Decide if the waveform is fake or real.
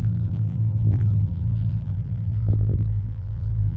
fake